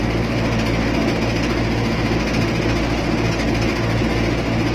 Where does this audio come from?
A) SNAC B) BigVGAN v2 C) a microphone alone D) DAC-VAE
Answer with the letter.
C